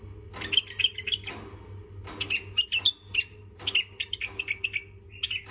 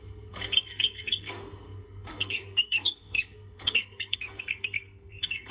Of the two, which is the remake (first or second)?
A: second